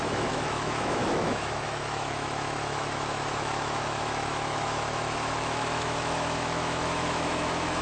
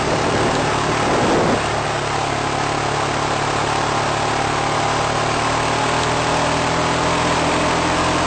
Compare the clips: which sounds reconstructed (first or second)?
first